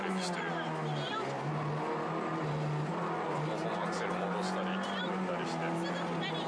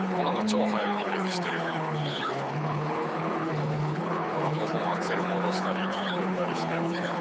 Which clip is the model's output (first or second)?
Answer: second